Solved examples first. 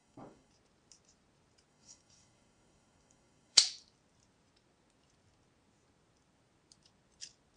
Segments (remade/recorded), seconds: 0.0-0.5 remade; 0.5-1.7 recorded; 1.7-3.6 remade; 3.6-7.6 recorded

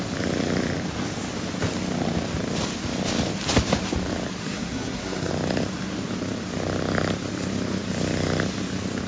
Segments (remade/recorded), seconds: 0.0-4.4 recorded; 4.4-5.3 remade; 5.3-9.1 recorded

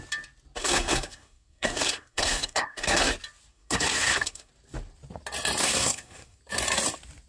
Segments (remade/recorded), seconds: 0.0-0.6 recorded; 0.6-3.1 remade; 3.1-3.5 recorded; 3.5-4.5 remade; 4.5-5.6 recorded; 5.6-6.4 remade; 6.4-7.3 recorded

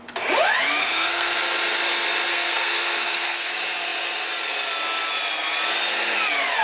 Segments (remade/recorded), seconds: 0.0-0.8 recorded; 0.8-1.3 remade; 1.3-2.3 recorded; 2.3-3.5 remade; 3.5-6.6 recorded

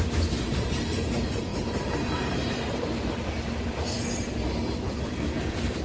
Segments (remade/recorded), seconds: 0.0-5.8 recorded

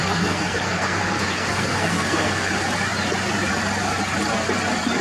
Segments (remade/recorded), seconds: 0.0-2.5 remade; 2.5-5.0 recorded